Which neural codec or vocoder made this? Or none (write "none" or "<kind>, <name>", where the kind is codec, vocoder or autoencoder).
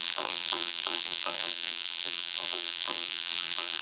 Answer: vocoder, BigVGAN v2